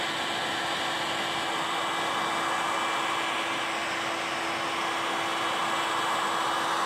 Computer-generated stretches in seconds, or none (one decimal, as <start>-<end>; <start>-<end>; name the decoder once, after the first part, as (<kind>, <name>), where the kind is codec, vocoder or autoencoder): none